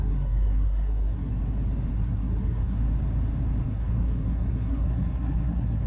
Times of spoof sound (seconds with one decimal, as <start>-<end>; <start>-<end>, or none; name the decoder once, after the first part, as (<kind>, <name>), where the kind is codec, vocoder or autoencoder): 0.0-1.3 (codec, SNAC); 1.9-2.8; 3.6-5.9